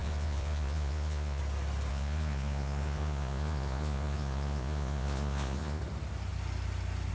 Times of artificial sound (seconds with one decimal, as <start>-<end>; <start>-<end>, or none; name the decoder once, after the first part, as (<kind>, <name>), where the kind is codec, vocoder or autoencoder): 0.0-1.4 (vocoder, Vocos); 1.9-5.8